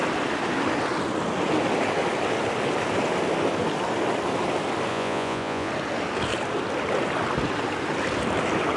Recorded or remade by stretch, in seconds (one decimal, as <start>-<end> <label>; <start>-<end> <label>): 0.0-4.9 recorded; 4.9-5.7 remade; 5.7-8.8 recorded